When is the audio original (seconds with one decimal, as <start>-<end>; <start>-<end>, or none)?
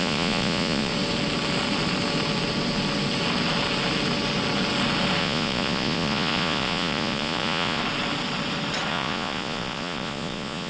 0.9-5.2; 7.8-8.9